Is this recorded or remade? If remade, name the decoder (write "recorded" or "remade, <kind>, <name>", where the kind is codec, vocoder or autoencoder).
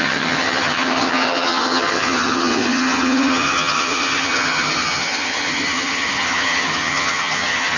remade, vocoder, HiFi-GAN